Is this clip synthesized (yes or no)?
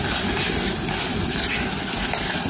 no